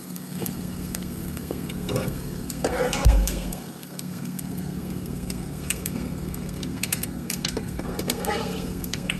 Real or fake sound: fake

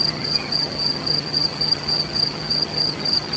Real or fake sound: fake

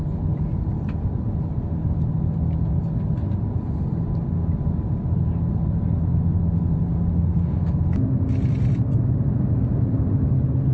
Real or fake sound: real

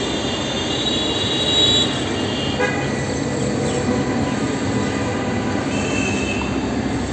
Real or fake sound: real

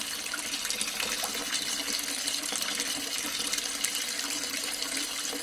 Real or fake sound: real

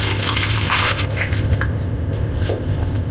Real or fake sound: fake